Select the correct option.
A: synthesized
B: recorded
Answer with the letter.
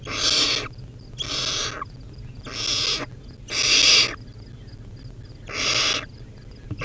B